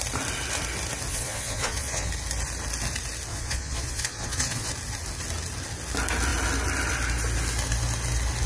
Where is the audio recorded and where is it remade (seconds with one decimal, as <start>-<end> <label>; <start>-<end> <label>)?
0.0-1.1 recorded; 1.1-2.1 remade; 2.1-3.3 recorded; 3.3-4.7 remade; 4.7-8.5 recorded